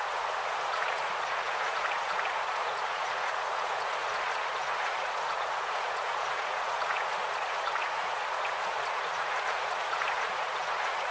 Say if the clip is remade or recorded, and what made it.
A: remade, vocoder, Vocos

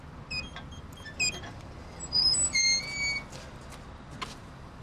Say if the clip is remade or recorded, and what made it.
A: recorded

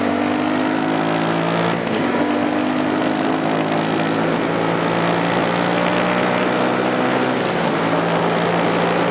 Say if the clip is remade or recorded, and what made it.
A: recorded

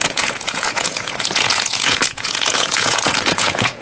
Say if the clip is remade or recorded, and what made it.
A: remade, vocoder, Vocos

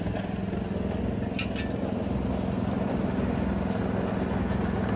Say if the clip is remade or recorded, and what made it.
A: recorded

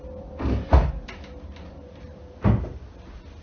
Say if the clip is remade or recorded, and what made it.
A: recorded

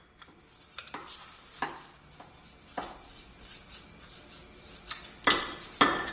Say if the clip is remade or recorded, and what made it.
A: recorded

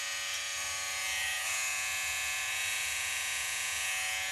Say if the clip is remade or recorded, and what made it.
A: remade, vocoder, Vocos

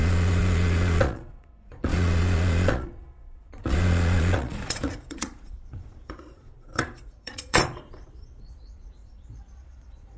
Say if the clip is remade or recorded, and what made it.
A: remade, vocoder, Vocos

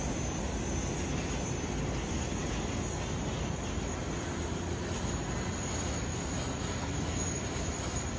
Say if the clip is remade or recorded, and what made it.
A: recorded